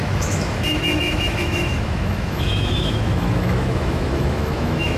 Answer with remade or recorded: remade